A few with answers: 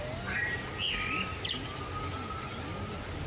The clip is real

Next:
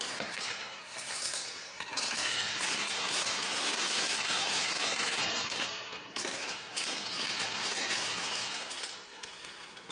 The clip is fake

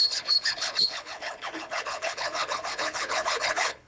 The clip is fake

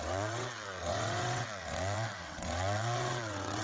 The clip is fake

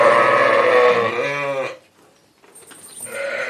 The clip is real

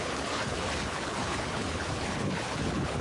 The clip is fake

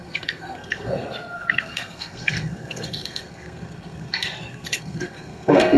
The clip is fake